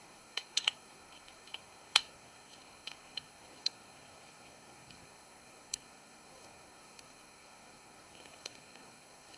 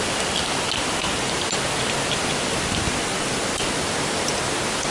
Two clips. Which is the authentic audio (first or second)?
second